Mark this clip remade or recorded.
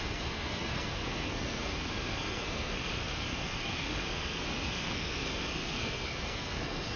remade